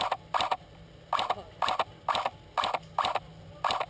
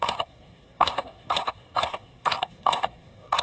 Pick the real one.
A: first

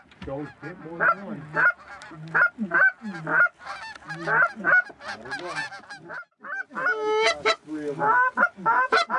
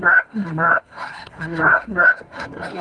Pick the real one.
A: first